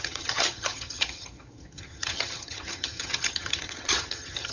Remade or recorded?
remade